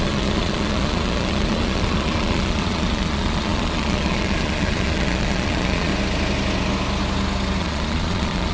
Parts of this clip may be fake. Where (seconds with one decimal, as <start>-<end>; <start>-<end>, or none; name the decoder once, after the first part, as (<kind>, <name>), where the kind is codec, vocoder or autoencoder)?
0.0-5.9 (vocoder, Vocos); 7.6-8.5

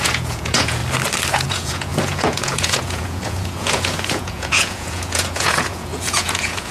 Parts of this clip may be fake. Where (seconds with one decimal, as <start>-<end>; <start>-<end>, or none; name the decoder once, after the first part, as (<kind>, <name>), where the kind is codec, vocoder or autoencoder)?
0.0-0.8 (vocoder, Vocos); 1.3-6.7

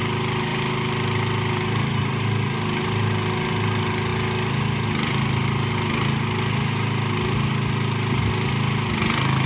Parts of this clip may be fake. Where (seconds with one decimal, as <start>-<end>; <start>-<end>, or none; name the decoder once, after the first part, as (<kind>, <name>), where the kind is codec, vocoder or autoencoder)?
none

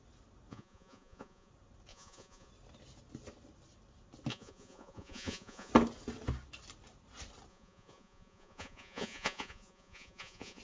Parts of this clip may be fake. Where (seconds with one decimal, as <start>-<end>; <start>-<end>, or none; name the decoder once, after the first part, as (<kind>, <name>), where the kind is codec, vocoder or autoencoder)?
0.5-1.5 (vocoder, Vocos); 1.9-2.5; 4.3-5.7; 7.5-10.6

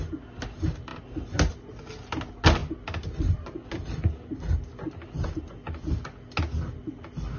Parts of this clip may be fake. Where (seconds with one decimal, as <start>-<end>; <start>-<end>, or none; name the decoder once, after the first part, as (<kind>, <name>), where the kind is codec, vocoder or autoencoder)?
none

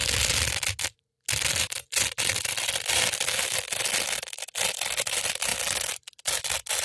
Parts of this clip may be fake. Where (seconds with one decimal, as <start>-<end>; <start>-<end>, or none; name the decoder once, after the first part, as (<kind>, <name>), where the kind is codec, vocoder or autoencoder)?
none